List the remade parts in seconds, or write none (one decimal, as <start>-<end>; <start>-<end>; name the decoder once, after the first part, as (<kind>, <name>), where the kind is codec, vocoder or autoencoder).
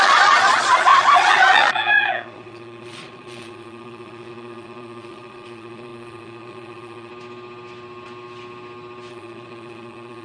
0.0-7.1 (vocoder, Vocos); 9.1-10.2